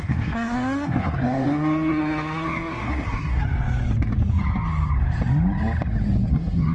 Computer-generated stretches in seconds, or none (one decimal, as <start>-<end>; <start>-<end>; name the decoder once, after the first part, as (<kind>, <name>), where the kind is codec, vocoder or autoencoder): 0.0-3.4 (codec, SNAC); 6.3-6.7

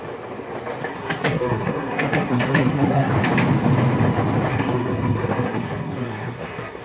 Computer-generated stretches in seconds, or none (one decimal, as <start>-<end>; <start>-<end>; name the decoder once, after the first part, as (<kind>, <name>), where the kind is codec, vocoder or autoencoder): 0.9-3.1 (codec, SNAC); 4.5-6.8

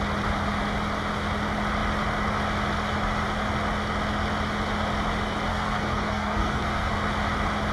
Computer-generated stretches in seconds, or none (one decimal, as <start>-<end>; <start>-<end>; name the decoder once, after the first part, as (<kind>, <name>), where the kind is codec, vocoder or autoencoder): 5.5-6.9 (codec, SNAC)